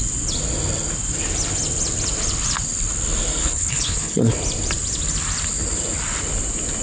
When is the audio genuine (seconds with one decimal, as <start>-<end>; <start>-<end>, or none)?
0.0-3.4; 4.3-6.8